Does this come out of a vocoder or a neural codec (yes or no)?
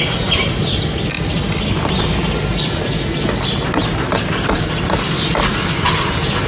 no